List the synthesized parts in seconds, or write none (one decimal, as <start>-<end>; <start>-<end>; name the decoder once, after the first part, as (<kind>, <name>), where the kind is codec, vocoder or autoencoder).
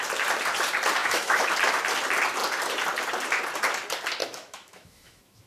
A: 1.0-1.5 (autoencoder, DAC-VAE); 4.2-5.5